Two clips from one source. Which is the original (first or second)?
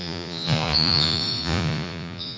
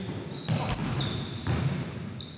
second